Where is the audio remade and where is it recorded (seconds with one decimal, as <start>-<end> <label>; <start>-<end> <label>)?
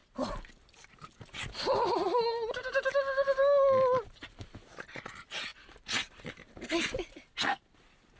0.0-8.2 recorded